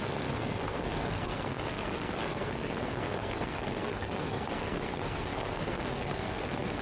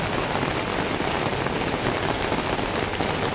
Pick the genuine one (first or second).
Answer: second